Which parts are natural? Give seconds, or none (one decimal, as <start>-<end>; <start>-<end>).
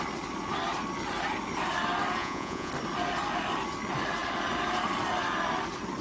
0.0-2.2; 2.7-6.0